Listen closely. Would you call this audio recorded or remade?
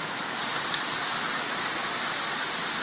recorded